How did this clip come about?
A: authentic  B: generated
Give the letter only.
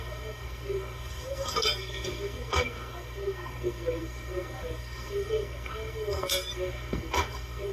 B